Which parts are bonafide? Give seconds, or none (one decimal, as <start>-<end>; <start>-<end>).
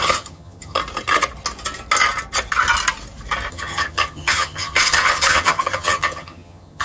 0.8-3.5